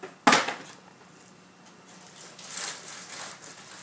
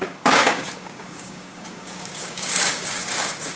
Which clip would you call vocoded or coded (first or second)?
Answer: second